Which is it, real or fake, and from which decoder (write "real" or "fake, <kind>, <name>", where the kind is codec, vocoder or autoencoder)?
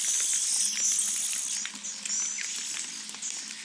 real